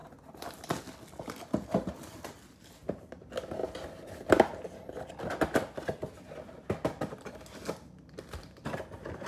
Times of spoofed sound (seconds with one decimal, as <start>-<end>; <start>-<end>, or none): none